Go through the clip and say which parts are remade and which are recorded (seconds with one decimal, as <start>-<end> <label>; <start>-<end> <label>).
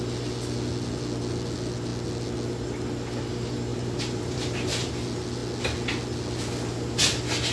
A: 0.0-3.7 recorded; 3.7-4.9 remade; 4.9-7.5 recorded